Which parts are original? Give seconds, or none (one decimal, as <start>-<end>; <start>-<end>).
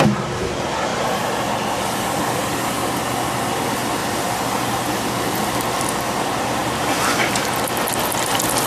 0.0-8.7